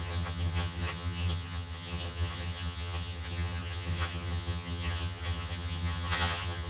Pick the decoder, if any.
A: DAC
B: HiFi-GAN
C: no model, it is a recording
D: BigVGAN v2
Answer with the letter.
B